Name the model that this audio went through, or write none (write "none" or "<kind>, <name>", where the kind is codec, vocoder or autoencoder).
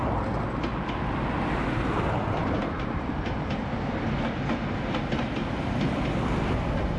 none